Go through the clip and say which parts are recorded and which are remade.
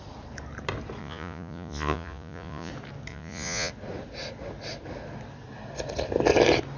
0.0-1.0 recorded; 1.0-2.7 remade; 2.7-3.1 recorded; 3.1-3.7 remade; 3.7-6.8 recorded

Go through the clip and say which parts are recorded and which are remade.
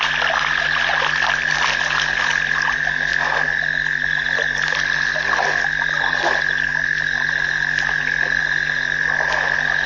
0.0-6.7 recorded; 6.7-8.4 remade; 8.4-9.9 recorded